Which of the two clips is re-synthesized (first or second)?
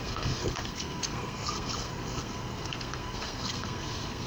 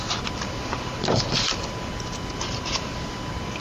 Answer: first